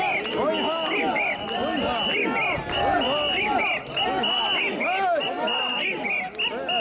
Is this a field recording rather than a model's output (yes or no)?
yes